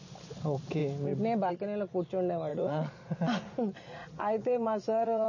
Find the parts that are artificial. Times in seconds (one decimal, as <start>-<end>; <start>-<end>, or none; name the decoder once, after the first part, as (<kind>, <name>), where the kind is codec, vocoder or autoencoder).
2.5-3.2 (vocoder, Vocos); 4.0-5.3